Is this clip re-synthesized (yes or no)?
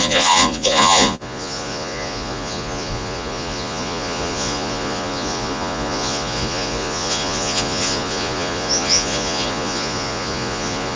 yes